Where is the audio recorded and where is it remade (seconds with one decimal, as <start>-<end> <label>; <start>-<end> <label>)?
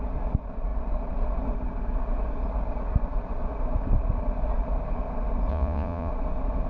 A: 0.0-5.5 recorded; 5.5-6.1 remade; 6.1-6.7 recorded